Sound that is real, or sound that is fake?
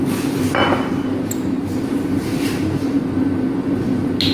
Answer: real